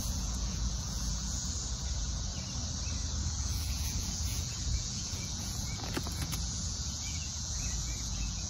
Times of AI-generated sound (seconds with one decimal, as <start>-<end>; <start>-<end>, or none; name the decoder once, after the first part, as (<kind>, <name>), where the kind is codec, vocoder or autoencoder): 0.0-2.3 (vocoder, Vocos); 3.2-8.5